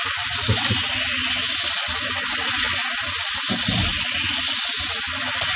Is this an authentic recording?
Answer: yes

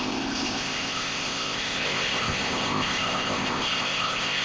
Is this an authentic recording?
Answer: no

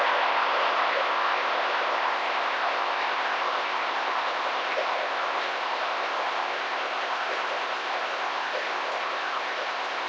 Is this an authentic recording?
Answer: no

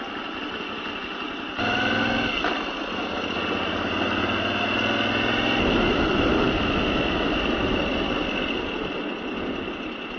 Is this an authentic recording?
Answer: yes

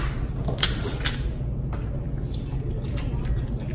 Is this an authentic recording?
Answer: yes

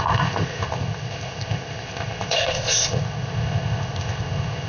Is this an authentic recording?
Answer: no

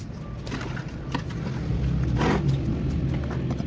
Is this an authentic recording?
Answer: yes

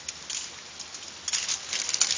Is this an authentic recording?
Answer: yes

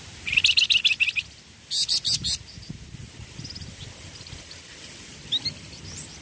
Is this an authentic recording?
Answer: yes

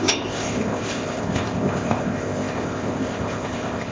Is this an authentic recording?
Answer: no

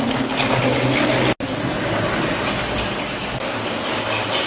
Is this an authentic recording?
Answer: yes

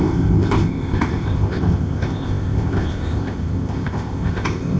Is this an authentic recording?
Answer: no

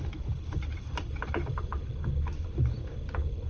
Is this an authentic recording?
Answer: yes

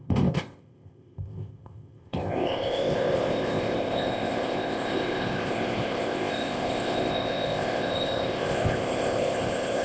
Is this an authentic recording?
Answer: no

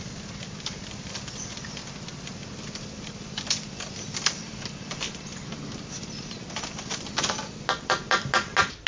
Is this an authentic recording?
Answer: yes